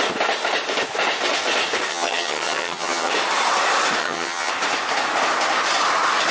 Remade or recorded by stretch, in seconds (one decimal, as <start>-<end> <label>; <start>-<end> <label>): 0.0-1.9 recorded; 1.9-3.1 remade; 3.1-4.0 recorded; 4.0-4.5 remade; 4.5-6.3 recorded